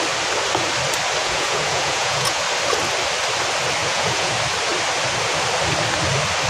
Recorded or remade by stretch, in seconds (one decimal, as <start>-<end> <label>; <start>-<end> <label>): 0.0-1.2 recorded; 1.2-2.4 remade; 2.4-3.8 recorded; 3.8-4.3 remade; 4.3-6.5 recorded